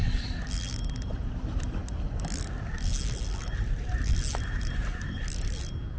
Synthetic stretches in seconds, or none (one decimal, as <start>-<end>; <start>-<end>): none